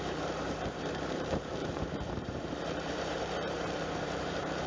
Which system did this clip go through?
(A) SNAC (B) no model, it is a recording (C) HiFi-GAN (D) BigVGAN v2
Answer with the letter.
D